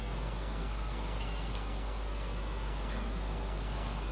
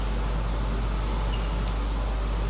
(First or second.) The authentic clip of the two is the second